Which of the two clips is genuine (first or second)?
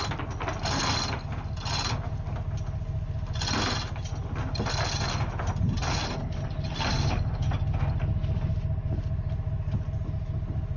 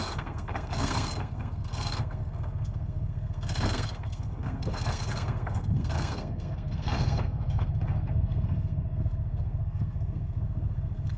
first